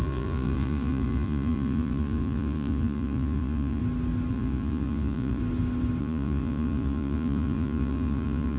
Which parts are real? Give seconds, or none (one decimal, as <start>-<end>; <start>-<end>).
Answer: 3.8-4.3; 5.4-6.0